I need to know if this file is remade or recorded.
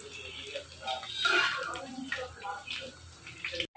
recorded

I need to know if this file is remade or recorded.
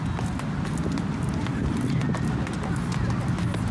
recorded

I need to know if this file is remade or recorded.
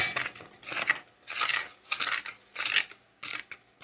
recorded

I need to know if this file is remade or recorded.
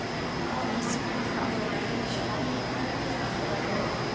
recorded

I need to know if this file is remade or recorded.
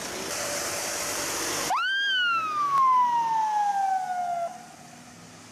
recorded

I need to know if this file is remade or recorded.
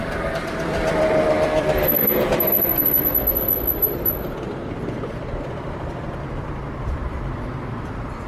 remade